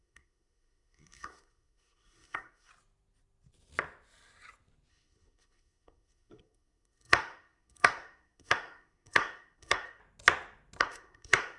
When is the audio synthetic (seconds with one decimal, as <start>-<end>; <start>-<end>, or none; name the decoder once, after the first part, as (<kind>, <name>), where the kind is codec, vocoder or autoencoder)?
0.0-2.7 (codec, SNAC); 4.9-10.0; 10.8-11.6